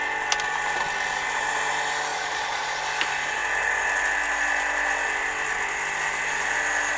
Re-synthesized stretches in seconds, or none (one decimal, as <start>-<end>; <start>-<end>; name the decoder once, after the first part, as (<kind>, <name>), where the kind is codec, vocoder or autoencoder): 2.1-2.8 (vocoder, Vocos)